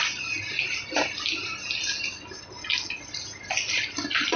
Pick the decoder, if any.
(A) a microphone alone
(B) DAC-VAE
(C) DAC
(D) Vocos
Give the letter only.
A